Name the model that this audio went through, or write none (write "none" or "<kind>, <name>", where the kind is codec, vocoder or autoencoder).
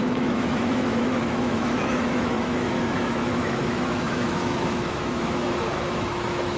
autoencoder, DAC-VAE